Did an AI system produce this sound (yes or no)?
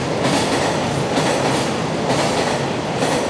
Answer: no